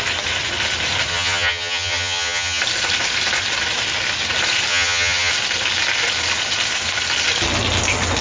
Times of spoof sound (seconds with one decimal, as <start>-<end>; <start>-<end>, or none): 1.1-2.6; 4.7-5.3